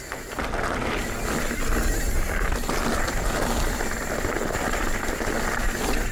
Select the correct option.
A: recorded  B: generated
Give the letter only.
A